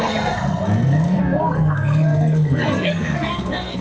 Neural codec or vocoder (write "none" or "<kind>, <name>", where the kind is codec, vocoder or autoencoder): codec, SNAC